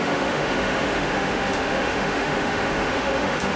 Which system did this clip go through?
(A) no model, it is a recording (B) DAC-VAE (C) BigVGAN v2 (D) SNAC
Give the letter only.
B